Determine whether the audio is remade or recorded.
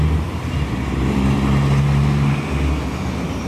recorded